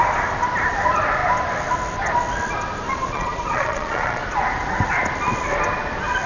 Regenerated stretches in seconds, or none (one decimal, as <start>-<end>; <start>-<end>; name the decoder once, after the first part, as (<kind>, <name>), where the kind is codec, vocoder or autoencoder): 2.9-4.2 (vocoder, Vocos)